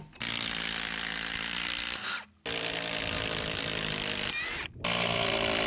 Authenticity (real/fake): real